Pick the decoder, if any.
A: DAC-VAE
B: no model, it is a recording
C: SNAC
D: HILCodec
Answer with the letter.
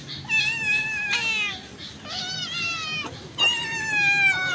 B